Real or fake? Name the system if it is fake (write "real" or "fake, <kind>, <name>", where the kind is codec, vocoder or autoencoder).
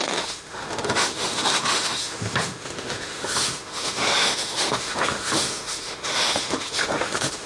fake, autoencoder, DAC-VAE